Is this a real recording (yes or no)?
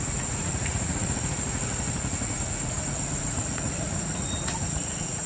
no